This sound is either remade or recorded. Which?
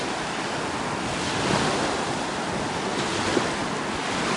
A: recorded